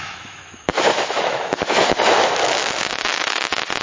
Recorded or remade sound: remade